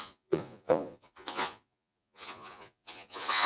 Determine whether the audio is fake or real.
fake